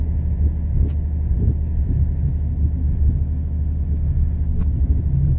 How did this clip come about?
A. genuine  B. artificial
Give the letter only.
A